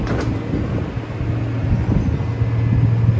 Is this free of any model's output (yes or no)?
yes